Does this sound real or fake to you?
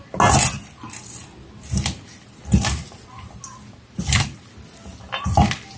real